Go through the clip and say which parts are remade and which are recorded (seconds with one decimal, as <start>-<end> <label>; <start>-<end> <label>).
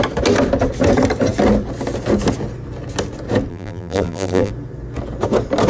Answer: 0.0-3.5 recorded; 3.5-4.5 remade; 4.5-5.7 recorded